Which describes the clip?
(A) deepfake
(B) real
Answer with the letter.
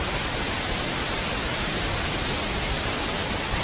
B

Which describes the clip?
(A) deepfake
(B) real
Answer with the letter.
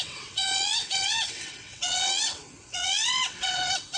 A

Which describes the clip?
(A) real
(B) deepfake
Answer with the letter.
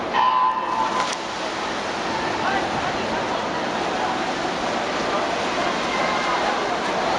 A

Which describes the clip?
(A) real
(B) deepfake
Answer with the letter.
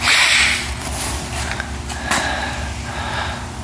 A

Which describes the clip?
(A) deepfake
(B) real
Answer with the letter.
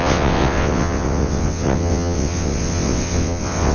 A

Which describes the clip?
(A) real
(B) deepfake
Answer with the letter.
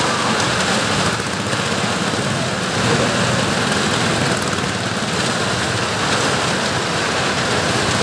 A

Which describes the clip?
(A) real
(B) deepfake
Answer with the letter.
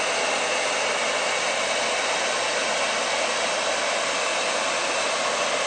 A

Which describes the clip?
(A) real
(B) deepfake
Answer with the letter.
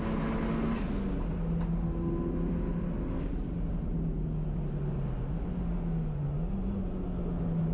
A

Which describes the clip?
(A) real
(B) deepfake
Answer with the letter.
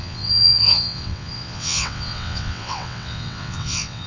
B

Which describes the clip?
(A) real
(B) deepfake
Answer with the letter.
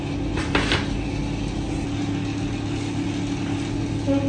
A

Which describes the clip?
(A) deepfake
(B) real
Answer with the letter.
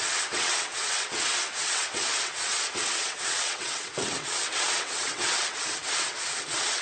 A